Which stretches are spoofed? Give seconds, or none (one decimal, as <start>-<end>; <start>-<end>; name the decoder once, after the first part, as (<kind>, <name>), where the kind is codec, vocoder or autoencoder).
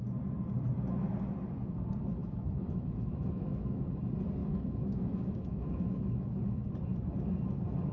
2.2-3.9 (autoencoder, DAC-VAE); 4.4-6.4